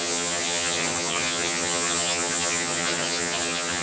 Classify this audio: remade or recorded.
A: remade